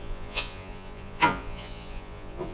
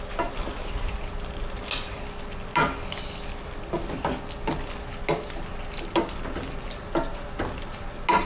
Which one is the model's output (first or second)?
first